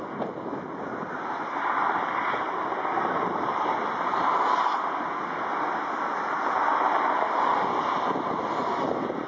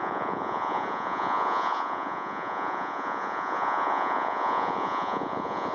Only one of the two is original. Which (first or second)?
first